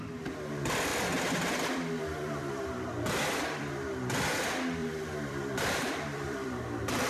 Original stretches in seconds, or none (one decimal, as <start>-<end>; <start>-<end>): 0.0-0.9; 3.7-4.8; 6.6-7.1